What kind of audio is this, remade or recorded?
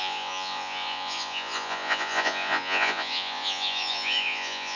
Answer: remade